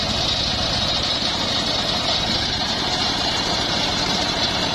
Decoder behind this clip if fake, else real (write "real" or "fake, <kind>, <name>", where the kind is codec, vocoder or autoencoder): fake, vocoder, BigVGAN v2